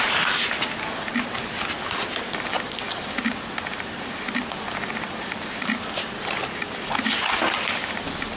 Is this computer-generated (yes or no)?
no